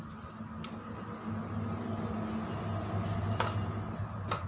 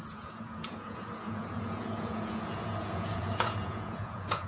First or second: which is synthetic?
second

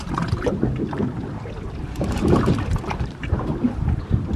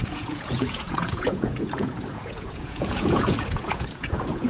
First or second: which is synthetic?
second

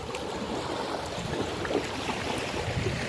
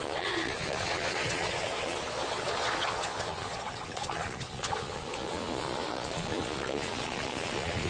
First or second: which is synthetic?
second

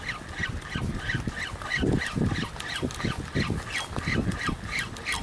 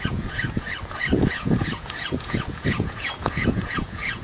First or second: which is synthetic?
second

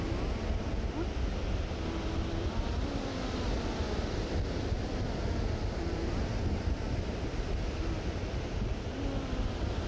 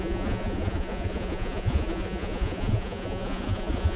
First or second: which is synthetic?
second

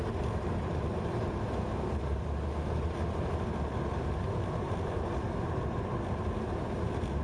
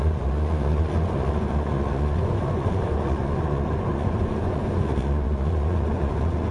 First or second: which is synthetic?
second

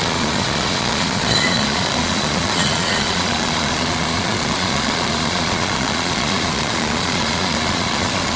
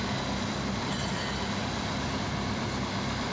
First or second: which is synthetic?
first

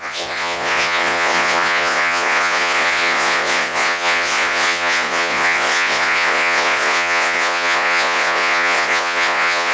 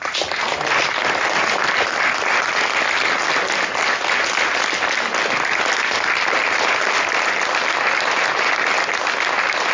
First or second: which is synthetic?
first